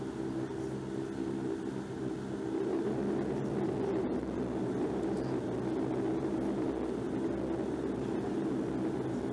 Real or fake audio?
real